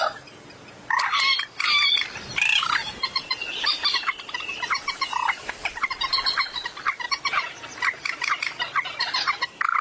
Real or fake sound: real